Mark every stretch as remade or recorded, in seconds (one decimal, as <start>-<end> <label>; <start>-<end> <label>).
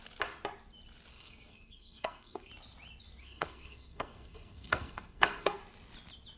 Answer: 0.0-1.1 recorded; 1.1-2.5 remade; 2.5-3.2 recorded; 3.2-5.6 remade; 5.6-6.4 recorded